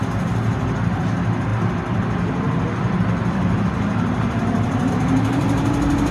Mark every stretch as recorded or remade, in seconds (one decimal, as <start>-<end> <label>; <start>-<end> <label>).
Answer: 0.0-6.1 recorded